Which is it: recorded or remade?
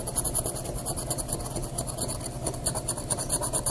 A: recorded